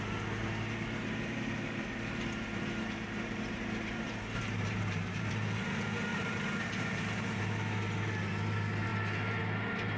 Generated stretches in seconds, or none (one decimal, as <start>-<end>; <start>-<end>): 1.0-5.3; 6.1-7.4